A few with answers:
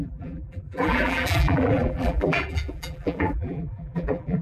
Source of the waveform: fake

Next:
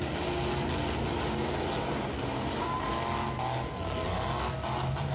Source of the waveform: real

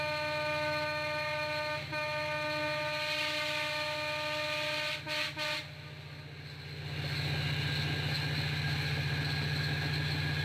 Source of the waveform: real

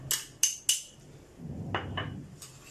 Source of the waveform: real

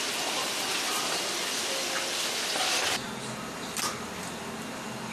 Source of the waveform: real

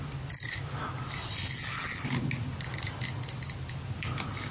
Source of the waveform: real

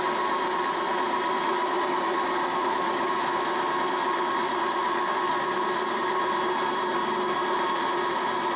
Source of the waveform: real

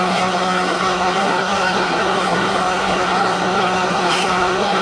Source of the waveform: fake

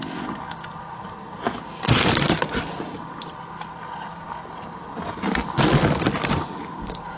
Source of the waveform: real